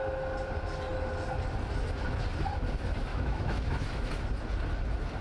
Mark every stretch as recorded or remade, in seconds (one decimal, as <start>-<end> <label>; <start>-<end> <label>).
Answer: 0.0-3.1 recorded; 3.1-4.1 remade; 4.1-5.2 recorded